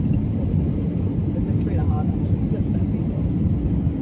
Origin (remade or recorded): recorded